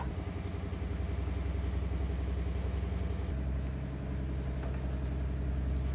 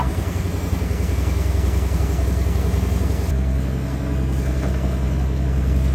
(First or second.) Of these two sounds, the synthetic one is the second